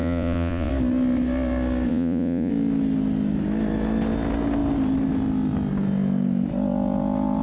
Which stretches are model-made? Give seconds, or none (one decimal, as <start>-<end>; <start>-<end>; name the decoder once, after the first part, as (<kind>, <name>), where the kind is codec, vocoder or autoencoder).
0.0-0.7 (vocoder, Vocos); 1.9-2.5